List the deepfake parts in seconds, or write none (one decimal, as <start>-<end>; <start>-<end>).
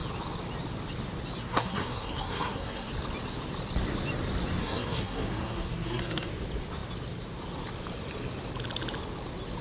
1.4-2.9; 4.6-6.3